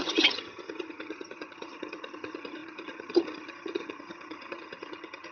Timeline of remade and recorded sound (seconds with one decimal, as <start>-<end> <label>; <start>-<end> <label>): 0.0-5.3 remade